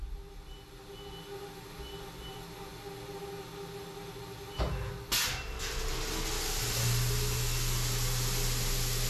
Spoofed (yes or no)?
no